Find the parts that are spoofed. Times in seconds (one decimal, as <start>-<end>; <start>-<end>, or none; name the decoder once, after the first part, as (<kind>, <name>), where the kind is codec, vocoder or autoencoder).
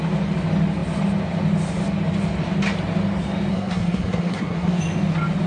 3.5-4.8 (codec, SNAC)